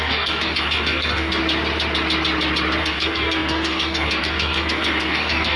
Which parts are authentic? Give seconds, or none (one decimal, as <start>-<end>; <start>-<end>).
1.4-2.8